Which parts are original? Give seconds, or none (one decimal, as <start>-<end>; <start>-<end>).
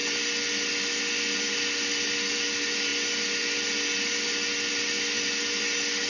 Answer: 0.0-6.1